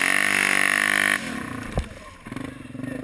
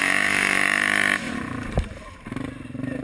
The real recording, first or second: first